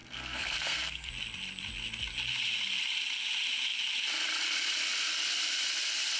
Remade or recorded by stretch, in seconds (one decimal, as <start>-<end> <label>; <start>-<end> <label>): 0.0-1.1 remade; 1.1-6.2 recorded